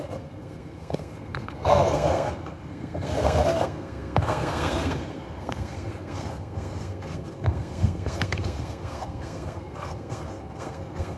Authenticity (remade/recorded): remade